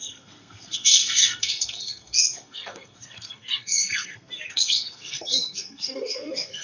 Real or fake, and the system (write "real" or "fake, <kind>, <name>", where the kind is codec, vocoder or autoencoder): fake, codec, SNAC